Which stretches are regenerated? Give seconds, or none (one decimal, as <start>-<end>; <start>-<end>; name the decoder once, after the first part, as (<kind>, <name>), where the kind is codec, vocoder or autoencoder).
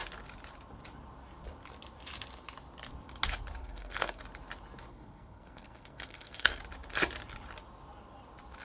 3.6-4.2 (codec, SNAC); 4.9-6.6